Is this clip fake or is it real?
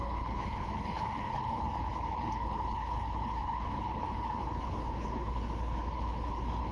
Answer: fake